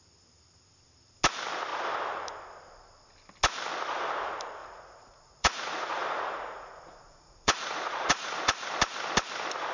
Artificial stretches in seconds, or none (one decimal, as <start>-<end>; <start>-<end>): 4.6-8.7